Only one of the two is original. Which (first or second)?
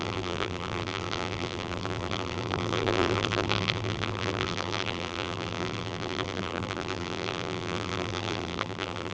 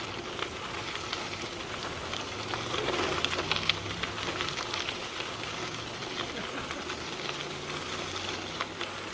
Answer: second